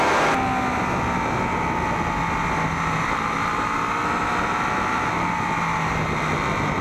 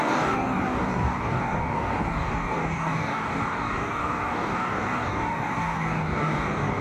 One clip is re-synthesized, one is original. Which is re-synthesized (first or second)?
second